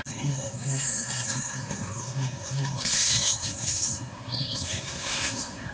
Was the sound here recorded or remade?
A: remade